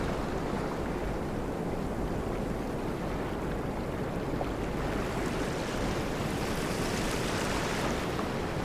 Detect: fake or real real